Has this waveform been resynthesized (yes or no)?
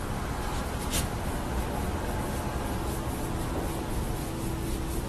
no